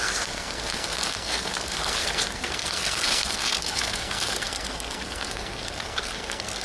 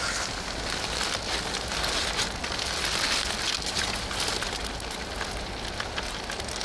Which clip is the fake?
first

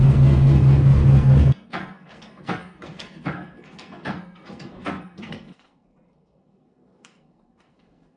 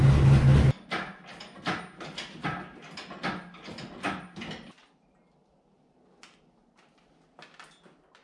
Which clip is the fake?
first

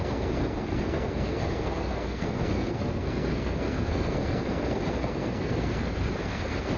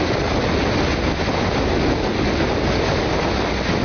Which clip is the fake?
first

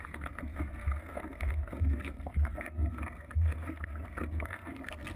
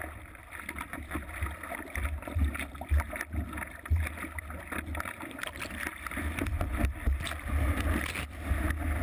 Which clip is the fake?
first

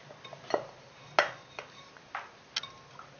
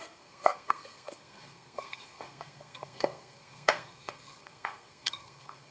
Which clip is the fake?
second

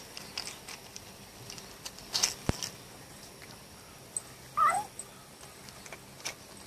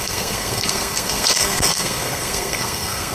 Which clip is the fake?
second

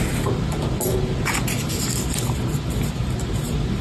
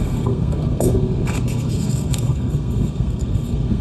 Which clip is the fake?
second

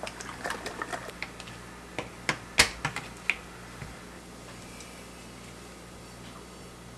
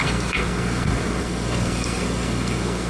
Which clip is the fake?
second